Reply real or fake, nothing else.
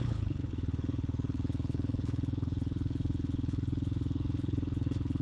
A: fake